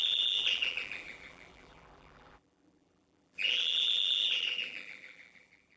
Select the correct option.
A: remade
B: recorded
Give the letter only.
A